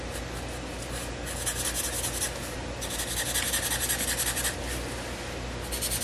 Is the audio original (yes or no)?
yes